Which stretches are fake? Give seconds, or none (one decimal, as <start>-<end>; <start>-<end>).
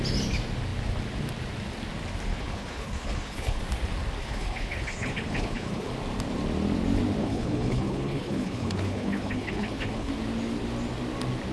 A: 2.3-3.6; 4.2-5.9; 7.2-10.1